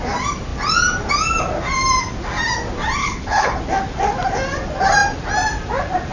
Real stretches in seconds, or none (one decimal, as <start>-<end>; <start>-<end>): 0.0-3.0; 3.6-6.1